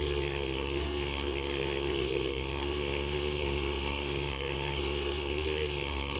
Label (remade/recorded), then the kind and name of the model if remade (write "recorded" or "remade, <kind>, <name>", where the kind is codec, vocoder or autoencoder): remade, codec, SNAC